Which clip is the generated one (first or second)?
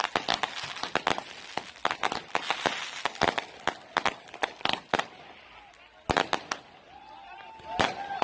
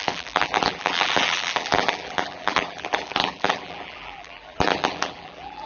second